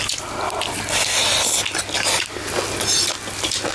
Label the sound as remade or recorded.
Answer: recorded